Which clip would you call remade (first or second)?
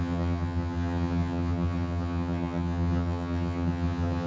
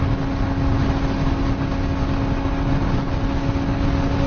first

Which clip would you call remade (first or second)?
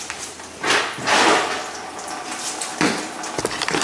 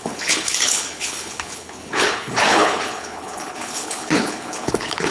second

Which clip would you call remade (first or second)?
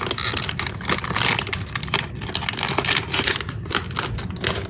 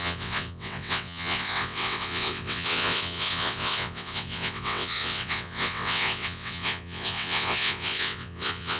second